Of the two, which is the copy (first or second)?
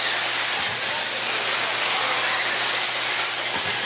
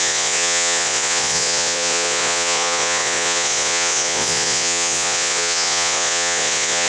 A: second